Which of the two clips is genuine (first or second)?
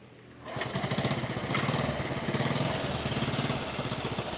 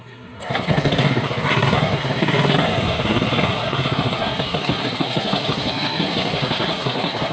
first